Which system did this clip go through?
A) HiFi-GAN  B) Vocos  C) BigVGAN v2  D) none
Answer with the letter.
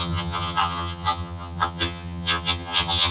A